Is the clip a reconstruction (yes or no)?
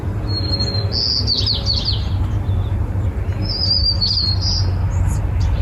no